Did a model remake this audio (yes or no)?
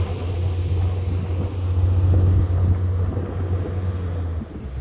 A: no